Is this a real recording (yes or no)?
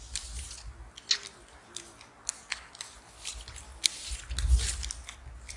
yes